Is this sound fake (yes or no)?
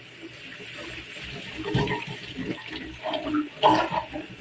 no